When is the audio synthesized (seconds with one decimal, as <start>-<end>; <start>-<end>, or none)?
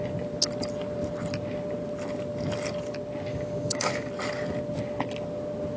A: 3.3-4.1